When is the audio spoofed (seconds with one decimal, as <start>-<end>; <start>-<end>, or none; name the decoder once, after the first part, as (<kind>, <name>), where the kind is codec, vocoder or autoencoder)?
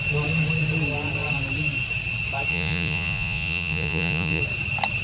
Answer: 2.5-4.4 (vocoder, Vocos)